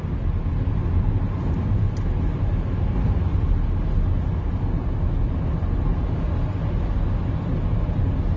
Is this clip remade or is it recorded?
recorded